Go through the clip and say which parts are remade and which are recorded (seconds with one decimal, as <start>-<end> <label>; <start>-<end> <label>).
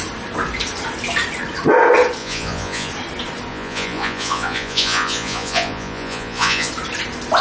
0.0-2.2 recorded; 2.2-2.9 remade; 2.9-3.5 recorded; 3.5-6.7 remade; 6.7-7.4 recorded